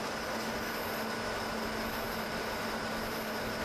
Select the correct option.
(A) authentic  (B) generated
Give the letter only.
A